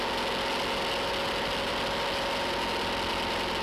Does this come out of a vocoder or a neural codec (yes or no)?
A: no